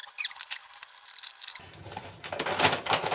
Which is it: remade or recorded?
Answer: recorded